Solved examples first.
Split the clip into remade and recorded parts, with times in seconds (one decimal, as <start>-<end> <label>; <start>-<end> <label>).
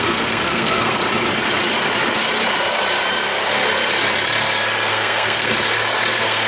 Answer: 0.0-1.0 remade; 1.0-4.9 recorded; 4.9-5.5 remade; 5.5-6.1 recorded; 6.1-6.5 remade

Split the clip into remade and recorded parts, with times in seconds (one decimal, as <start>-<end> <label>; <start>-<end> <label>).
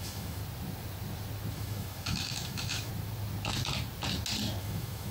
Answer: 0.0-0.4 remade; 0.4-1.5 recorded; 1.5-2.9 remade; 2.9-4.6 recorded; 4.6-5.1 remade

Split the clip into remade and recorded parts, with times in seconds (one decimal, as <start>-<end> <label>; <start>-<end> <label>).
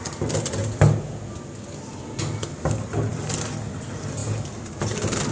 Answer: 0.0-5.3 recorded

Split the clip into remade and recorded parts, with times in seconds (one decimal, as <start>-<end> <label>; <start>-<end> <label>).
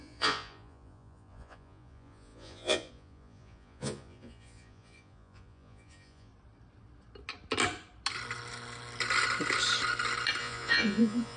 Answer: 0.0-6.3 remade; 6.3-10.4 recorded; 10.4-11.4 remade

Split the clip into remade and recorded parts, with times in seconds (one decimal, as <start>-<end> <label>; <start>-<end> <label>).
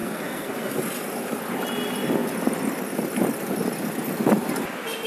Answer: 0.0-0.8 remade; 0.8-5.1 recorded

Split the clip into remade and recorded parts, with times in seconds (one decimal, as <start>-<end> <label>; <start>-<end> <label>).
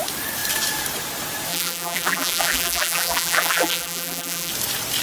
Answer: 0.0-1.5 recorded; 1.5-4.5 remade; 4.5-5.0 recorded